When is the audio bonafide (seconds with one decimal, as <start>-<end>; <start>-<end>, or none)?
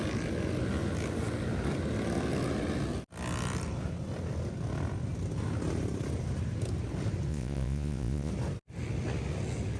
0.0-7.3; 8.3-9.8